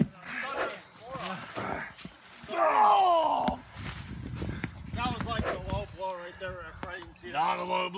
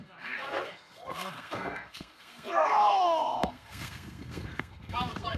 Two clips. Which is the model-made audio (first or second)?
second